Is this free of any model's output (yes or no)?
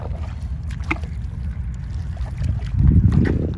yes